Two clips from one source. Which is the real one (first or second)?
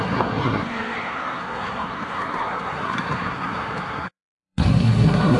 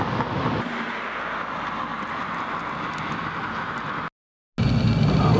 second